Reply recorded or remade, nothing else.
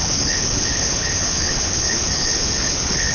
remade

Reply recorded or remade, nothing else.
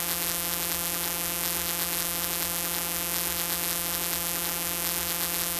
remade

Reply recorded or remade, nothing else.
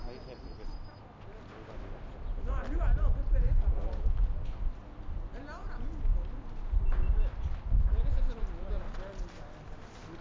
recorded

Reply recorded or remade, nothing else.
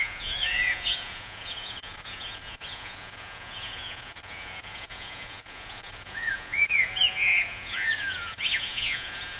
remade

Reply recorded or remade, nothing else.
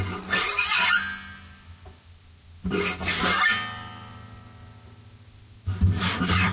recorded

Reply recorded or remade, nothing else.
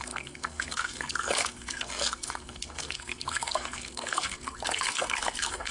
remade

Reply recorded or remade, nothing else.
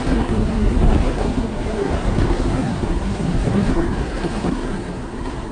remade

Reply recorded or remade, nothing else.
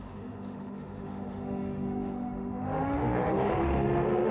remade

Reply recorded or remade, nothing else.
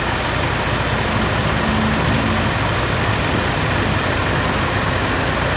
recorded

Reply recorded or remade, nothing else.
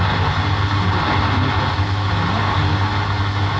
recorded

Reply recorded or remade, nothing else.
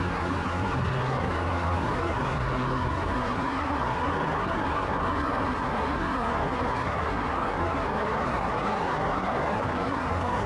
remade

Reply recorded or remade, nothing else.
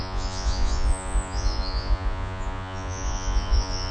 remade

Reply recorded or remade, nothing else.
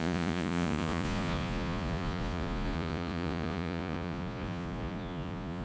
remade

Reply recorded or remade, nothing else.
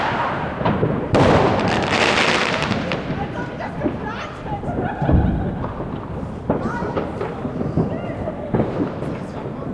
remade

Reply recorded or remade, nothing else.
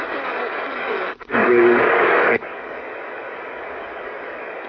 remade